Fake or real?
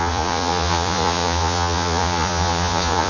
fake